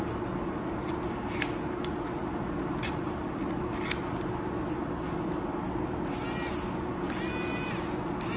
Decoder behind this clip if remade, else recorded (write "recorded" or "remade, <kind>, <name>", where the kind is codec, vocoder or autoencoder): recorded